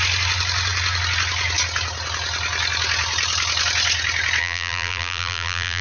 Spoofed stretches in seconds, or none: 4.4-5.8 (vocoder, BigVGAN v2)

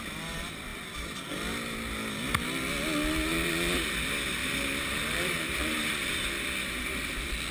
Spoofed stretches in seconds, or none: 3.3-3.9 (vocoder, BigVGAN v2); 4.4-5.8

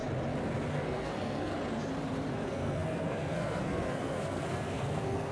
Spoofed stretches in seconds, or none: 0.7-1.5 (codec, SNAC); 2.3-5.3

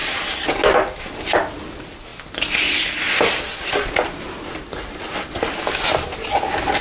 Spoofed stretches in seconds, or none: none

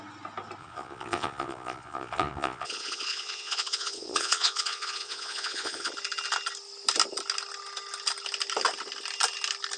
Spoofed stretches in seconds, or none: 0.6-5.9 (vocoder, Vocos)

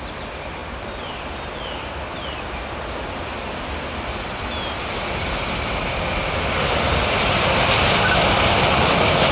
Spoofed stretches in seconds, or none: none

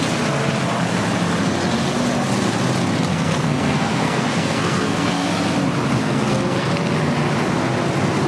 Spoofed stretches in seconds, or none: 3.1-5.3 (codec, SNAC); 6.0-6.7

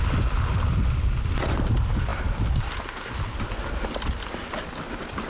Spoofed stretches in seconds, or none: none